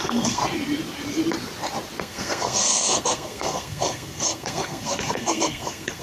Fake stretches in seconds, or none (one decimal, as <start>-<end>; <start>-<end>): 0.0-0.4; 2.0-6.0